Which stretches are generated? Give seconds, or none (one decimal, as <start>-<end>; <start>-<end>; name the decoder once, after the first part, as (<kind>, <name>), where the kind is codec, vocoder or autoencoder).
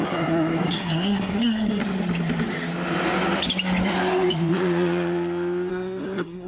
0.0-1.8 (codec, SNAC); 5.7-6.5